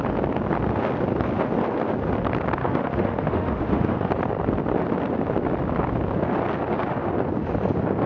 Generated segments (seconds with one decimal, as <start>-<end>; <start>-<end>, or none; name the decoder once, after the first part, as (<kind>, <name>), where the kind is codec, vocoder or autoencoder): 2.6-4.1 (autoencoder, DAC-VAE)

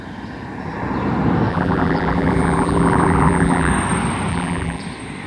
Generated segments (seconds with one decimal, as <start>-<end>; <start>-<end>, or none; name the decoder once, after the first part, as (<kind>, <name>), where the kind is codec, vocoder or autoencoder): 1.5-3.7 (vocoder, BigVGAN v2); 4.3-4.8

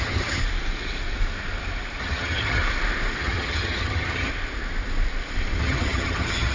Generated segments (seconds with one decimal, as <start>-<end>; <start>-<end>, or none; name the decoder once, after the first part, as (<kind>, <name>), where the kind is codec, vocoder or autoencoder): 0.0-0.4 (vocoder, HiFi-GAN); 2.0-2.6; 3.2-4.3; 5.6-6.5

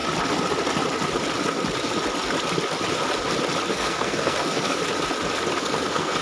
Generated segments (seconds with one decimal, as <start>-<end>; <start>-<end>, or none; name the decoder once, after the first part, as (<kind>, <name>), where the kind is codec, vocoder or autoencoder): 3.7-4.8 (codec, SNAC); 5.6-6.2